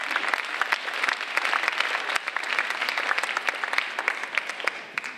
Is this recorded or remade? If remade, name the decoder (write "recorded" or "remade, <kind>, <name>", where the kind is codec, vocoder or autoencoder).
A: recorded